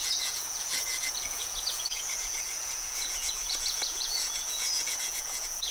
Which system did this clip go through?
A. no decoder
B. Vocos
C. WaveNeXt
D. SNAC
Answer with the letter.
B